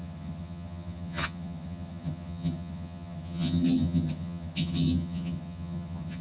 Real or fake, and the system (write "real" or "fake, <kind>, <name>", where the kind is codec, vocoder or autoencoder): fake, vocoder, HiFi-GAN